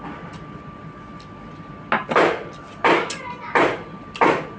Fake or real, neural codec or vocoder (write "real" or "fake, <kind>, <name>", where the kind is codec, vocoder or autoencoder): real